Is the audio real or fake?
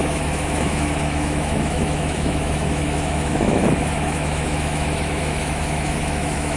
fake